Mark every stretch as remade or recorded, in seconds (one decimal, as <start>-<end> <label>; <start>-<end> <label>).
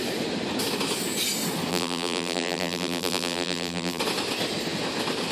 0.0-1.7 recorded; 1.7-4.0 remade; 4.0-5.3 recorded